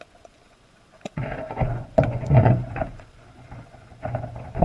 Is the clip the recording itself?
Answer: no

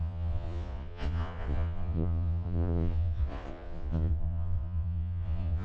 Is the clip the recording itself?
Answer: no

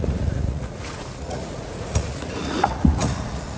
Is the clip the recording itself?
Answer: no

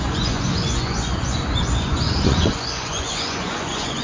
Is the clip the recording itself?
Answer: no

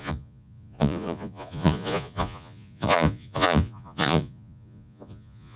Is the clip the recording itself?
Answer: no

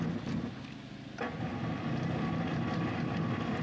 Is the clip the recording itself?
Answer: yes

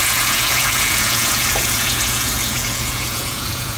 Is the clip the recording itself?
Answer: no